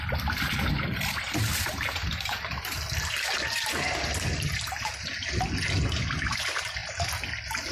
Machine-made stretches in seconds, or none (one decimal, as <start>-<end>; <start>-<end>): none